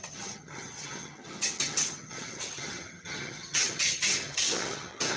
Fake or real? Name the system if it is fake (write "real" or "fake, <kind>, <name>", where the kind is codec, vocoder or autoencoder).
fake, vocoder, HiFi-GAN